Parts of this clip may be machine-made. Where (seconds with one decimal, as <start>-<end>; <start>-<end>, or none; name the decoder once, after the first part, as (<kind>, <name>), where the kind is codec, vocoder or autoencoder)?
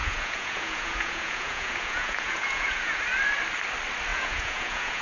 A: 0.0-3.0 (vocoder, Vocos); 4.1-5.0